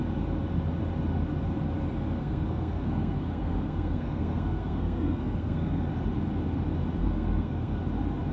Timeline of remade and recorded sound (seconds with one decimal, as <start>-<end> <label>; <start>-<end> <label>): 0.0-2.2 recorded; 2.2-5.9 remade; 5.9-7.0 recorded; 7.0-7.8 remade; 7.8-8.3 recorded